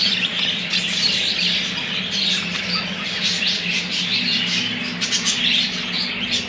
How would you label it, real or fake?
real